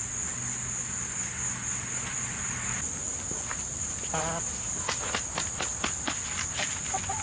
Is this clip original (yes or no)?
yes